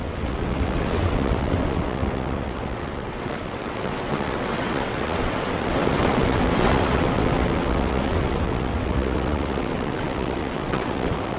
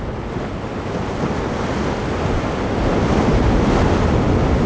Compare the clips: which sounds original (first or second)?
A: second